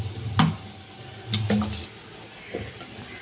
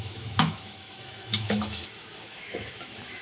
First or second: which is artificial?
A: second